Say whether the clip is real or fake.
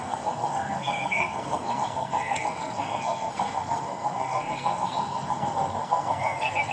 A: fake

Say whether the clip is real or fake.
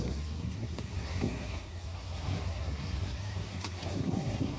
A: fake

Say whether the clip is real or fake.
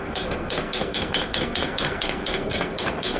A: fake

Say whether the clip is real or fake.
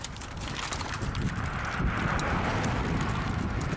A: real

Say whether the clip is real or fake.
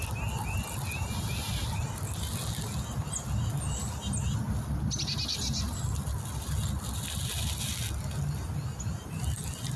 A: real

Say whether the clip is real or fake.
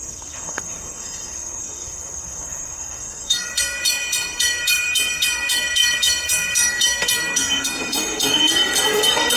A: fake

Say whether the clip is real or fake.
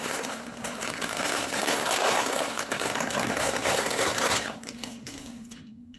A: fake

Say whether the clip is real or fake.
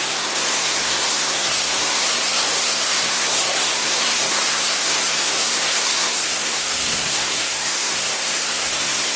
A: fake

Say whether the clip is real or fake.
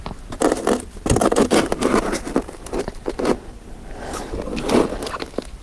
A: real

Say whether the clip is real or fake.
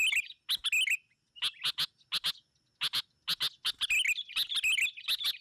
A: real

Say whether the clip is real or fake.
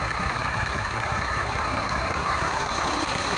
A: fake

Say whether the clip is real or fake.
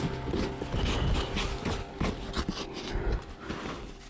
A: real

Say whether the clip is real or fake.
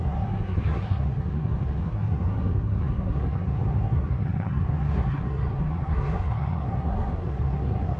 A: fake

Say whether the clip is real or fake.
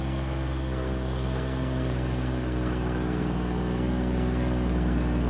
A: fake